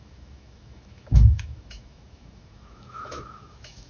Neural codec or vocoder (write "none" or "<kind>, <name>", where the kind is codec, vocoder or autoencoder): autoencoder, DAC-VAE